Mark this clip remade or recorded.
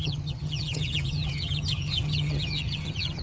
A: remade